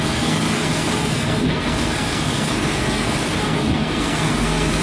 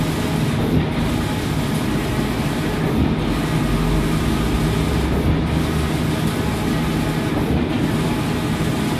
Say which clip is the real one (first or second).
second